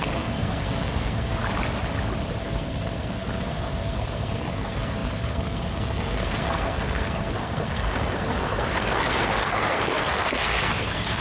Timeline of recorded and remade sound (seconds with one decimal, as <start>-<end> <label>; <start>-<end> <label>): 0.0-1.4 remade; 1.4-2.4 recorded; 2.4-11.2 remade

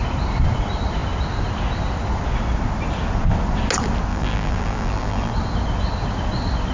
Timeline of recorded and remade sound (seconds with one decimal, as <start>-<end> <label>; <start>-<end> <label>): 0.0-4.1 recorded; 4.1-5.3 remade; 5.3-6.7 recorded